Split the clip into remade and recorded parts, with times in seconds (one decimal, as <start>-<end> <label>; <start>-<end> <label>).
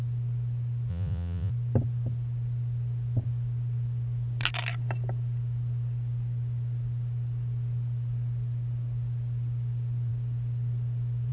0.0-0.9 recorded; 0.9-1.5 remade; 1.5-11.3 recorded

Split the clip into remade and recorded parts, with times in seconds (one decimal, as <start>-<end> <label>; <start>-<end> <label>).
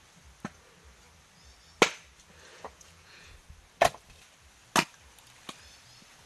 0.0-2.5 recorded; 2.5-3.3 remade; 3.3-6.3 recorded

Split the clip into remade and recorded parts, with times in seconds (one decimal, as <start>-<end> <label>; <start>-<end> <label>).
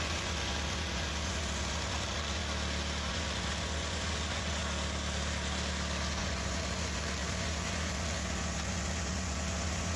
0.0-2.4 remade; 2.4-3.1 recorded; 3.1-4.6 remade; 4.6-6.2 recorded; 6.2-10.0 remade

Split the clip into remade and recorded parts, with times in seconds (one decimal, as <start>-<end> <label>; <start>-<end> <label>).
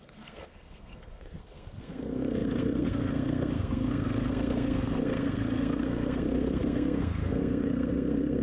0.0-8.4 remade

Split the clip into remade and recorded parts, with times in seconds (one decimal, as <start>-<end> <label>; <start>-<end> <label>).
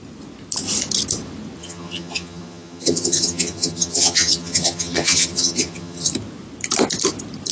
0.0-1.6 recorded; 1.6-6.1 remade; 6.1-7.5 recorded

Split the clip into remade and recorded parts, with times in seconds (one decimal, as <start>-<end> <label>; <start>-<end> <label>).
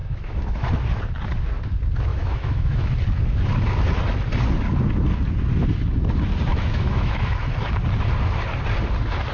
0.0-0.7 remade; 0.7-2.1 recorded; 2.1-2.9 remade; 2.9-6.5 recorded; 6.5-7.5 remade; 7.5-9.3 recorded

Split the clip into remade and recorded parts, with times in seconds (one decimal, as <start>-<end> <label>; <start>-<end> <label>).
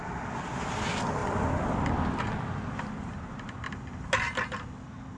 0.0-5.2 recorded